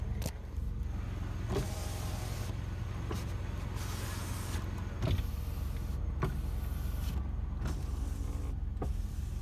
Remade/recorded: recorded